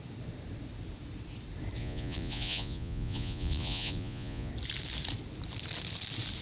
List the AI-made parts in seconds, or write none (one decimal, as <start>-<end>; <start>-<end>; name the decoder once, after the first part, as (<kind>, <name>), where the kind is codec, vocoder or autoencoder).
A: 1.8-4.5 (vocoder, Vocos)